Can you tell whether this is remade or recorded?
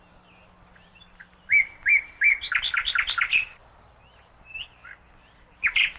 remade